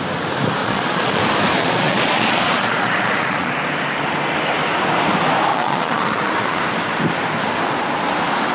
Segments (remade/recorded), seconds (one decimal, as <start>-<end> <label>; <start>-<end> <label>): 0.0-0.6 recorded; 0.6-1.2 remade; 1.2-1.6 recorded; 1.6-3.5 remade; 3.5-5.5 recorded; 5.5-6.6 remade; 6.6-8.5 recorded